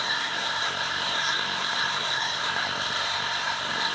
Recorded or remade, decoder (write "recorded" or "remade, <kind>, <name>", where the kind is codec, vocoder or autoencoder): remade, codec, SNAC